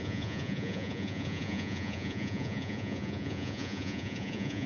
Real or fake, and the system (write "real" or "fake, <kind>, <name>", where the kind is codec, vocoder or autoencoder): fake, vocoder, Vocos